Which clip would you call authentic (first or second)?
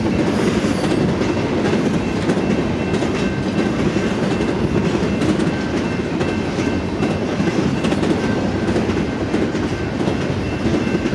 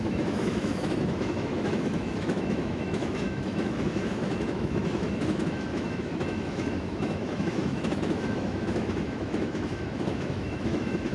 first